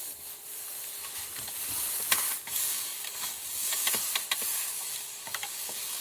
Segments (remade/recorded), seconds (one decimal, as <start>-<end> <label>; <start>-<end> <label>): 0.0-2.3 recorded; 2.3-4.0 remade; 4.0-4.5 recorded; 4.5-6.0 remade